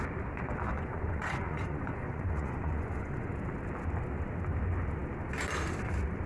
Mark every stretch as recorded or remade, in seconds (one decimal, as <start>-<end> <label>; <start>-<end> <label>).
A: 0.0-0.7 recorded; 0.7-3.3 remade; 3.3-6.3 recorded

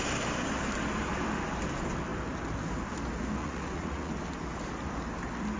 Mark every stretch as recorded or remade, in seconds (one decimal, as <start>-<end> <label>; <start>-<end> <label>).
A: 0.0-3.4 recorded; 3.4-4.1 remade; 4.1-5.6 recorded

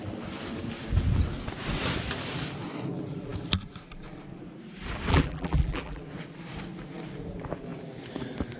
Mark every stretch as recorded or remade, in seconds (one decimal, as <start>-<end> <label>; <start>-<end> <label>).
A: 0.0-5.1 recorded; 5.1-6.0 remade; 6.0-8.6 recorded

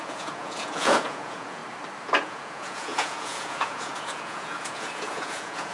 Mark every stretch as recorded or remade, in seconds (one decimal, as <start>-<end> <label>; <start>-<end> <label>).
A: 0.0-1.6 remade; 1.6-2.2 recorded; 2.2-5.7 remade

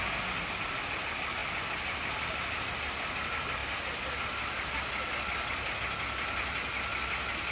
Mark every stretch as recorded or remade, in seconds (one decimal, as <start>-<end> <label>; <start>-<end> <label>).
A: 0.0-7.5 recorded